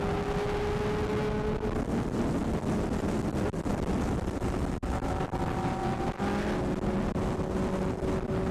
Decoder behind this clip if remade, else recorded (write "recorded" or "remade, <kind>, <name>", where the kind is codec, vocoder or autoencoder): recorded